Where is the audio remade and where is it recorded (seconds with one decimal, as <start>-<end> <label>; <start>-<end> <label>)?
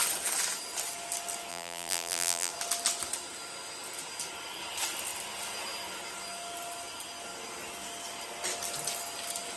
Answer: 0.0-1.5 recorded; 1.5-2.5 remade; 2.5-9.6 recorded